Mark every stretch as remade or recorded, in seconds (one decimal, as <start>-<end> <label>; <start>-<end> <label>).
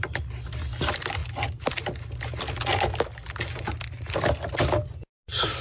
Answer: 0.0-5.6 recorded